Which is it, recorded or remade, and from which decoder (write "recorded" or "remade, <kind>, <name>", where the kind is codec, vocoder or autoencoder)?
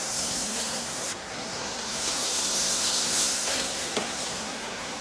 remade, codec, SNAC